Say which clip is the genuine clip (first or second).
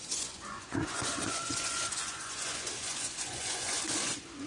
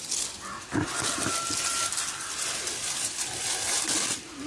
second